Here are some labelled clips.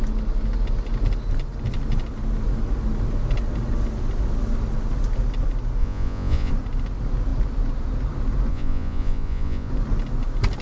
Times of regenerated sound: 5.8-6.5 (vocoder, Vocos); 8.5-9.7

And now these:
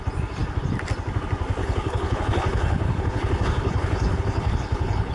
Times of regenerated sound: 1.6-5.1 (codec, HILCodec)

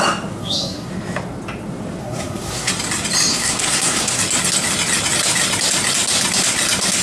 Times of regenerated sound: 0.4-0.9 (codec, SNAC); 2.0-2.7; 3.3-4.2